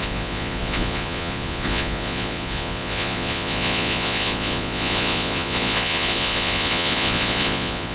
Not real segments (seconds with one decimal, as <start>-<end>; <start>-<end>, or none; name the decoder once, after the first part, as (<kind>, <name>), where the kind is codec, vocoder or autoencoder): 0.0-7.9 (vocoder, Vocos)